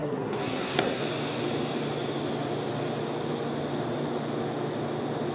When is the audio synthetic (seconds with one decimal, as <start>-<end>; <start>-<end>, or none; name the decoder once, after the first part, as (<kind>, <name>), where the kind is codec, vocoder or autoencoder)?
0.0-1.0 (codec, SNAC)